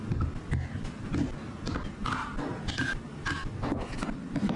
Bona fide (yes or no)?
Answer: yes